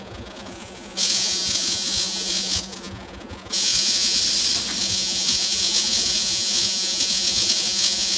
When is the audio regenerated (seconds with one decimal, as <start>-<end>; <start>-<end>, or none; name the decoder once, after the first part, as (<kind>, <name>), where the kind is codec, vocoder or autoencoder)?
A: 0.0-4.2 (vocoder, Vocos); 4.8-8.2